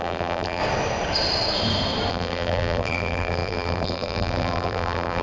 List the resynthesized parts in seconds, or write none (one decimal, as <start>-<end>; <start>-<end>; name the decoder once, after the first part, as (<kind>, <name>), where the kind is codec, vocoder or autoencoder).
0.0-0.6 (vocoder, BigVGAN v2); 2.1-5.2